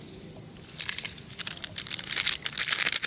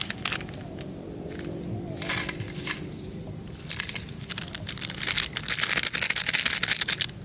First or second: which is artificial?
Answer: first